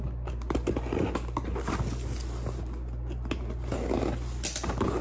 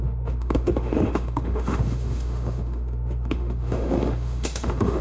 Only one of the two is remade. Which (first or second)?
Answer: second